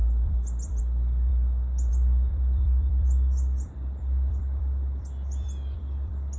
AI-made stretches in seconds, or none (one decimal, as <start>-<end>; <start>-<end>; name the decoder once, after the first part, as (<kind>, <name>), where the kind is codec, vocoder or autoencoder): 0.0-0.8 (vocoder, BigVGAN v2); 2.3-6.4